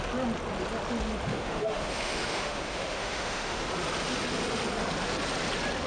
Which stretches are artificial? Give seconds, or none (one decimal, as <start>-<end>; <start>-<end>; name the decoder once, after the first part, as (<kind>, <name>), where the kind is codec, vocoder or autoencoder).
1.3-3.6 (autoencoder, DAC-VAE)